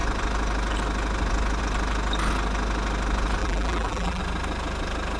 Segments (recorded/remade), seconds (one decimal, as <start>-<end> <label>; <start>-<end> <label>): 0.0-3.4 recorded; 3.4-4.2 remade; 4.2-5.2 recorded